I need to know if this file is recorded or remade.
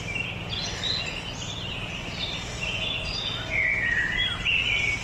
recorded